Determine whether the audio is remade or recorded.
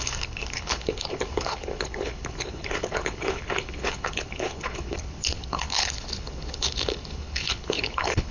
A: remade